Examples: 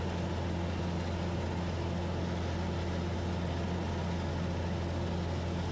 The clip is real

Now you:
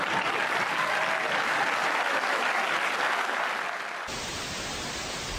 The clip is real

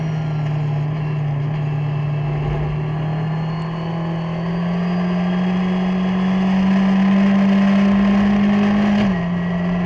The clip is real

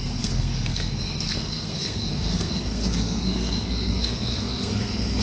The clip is fake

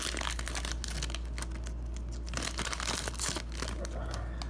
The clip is real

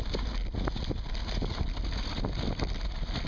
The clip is real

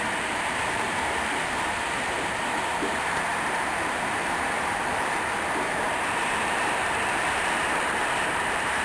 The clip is fake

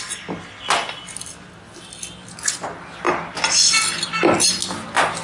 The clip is real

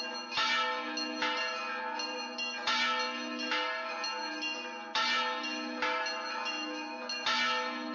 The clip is real